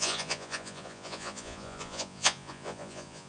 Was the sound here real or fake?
fake